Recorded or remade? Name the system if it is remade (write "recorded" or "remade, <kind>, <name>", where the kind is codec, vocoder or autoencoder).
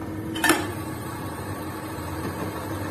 remade, vocoder, BigVGAN v2